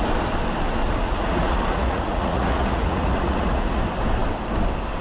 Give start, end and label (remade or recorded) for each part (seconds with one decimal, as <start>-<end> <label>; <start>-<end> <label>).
0.0-0.8 recorded; 0.8-3.8 remade; 3.8-5.0 recorded